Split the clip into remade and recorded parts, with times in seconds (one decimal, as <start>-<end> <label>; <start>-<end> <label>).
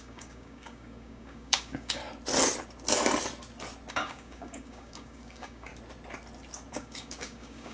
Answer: 0.0-2.0 remade; 2.0-3.9 recorded; 3.9-5.7 remade; 5.7-6.7 recorded; 6.7-7.7 remade